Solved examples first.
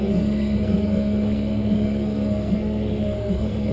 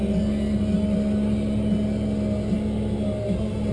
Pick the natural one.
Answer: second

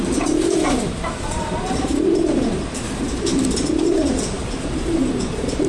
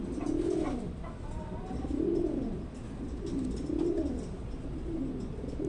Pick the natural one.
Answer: second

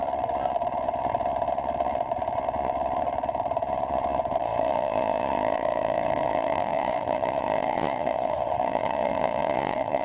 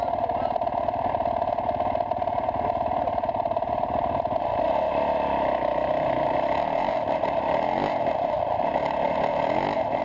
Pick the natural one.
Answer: second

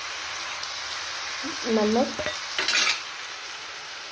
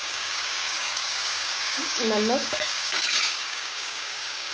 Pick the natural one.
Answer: first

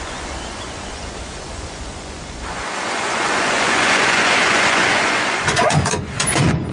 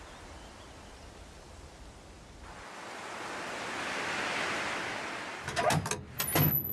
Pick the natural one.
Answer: second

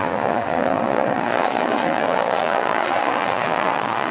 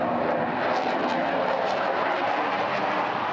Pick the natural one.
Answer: second